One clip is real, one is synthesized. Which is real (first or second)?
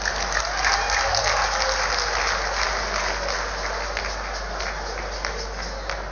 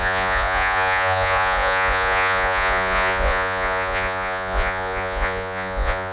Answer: first